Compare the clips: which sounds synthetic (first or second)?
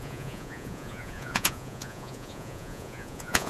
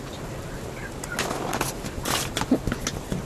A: first